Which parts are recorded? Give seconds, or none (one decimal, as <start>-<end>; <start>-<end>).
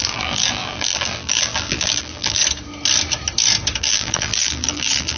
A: 2.4-3.8